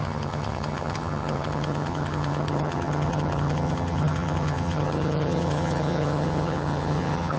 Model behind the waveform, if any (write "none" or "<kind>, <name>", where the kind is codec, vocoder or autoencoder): vocoder, HiFi-GAN